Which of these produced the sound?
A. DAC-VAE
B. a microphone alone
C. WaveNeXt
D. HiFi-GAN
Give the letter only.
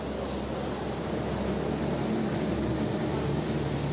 B